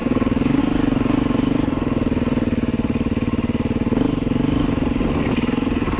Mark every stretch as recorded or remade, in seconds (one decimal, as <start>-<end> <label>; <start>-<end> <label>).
0.0-0.6 remade; 0.6-6.0 recorded